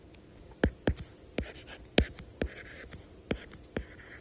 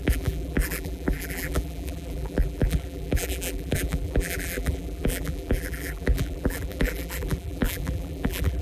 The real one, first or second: first